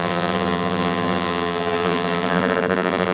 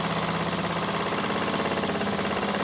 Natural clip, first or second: second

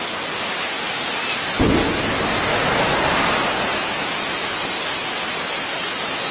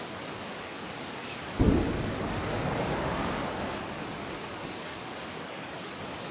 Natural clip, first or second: first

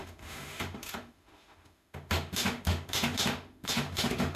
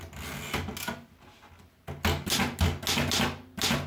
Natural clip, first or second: second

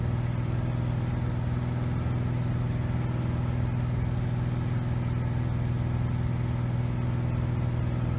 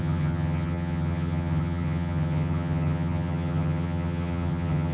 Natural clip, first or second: first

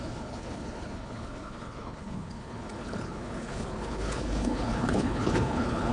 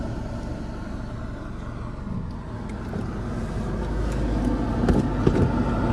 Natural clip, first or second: second